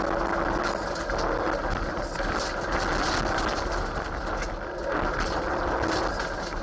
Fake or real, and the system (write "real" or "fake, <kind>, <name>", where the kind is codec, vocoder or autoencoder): real